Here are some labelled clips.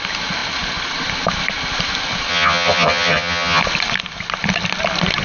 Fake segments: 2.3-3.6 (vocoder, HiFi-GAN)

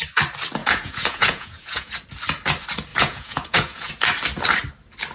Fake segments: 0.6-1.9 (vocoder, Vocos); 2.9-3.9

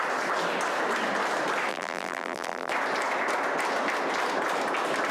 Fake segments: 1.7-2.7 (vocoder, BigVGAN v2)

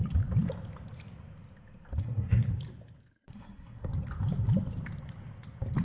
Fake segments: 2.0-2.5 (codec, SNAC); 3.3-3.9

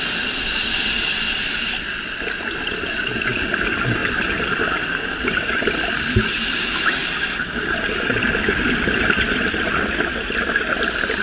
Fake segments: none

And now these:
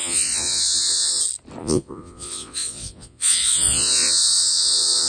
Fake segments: 0.0-1.2 (vocoder, Vocos); 1.6-5.1